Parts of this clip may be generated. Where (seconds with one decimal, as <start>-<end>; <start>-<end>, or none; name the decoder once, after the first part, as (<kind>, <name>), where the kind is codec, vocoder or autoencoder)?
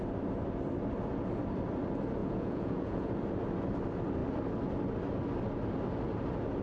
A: 2.2-3.1 (vocoder, Vocos)